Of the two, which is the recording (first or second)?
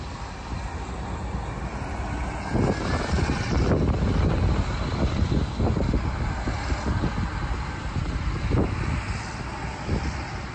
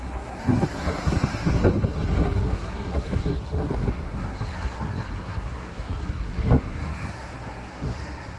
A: first